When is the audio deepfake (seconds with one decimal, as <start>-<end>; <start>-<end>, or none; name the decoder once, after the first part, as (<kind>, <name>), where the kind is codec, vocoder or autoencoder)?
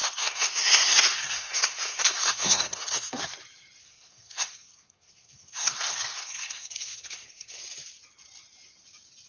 0.0-3.2 (codec, SNAC); 3.8-7.6